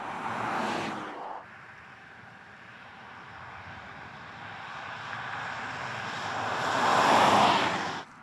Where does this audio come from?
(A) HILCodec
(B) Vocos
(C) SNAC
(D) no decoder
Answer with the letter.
D